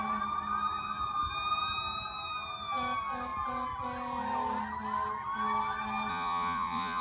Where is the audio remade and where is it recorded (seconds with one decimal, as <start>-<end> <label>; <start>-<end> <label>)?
0.0-6.1 recorded; 6.1-7.0 remade